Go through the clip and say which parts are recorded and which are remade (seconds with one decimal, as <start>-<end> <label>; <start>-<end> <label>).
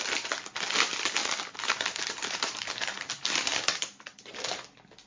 0.0-1.2 recorded; 1.2-4.3 remade; 4.3-5.1 recorded